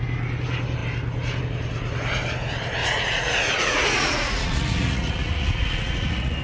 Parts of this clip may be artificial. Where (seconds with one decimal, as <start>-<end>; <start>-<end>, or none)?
2.8-6.4